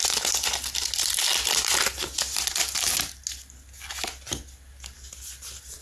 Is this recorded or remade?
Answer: recorded